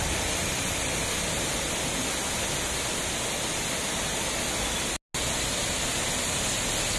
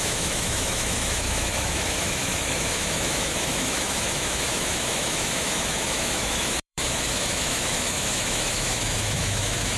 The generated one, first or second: second